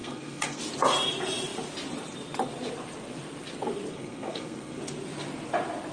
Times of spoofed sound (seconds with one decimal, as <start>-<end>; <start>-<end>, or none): 0.0-0.6; 3.9-4.8